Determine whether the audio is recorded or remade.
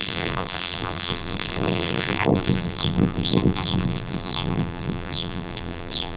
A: remade